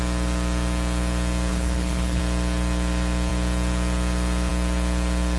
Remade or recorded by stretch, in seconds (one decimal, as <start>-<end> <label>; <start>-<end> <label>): 0.0-1.5 recorded; 1.5-2.2 remade; 2.2-5.4 recorded